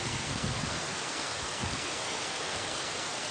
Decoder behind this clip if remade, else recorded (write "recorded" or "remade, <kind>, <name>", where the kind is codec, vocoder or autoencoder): remade, codec, SNAC